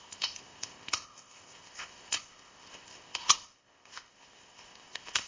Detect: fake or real fake